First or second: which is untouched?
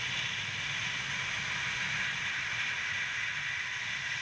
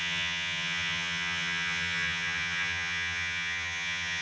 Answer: first